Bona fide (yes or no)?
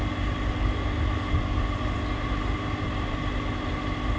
yes